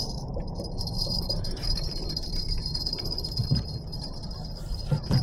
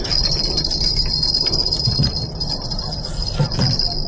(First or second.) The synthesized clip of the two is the first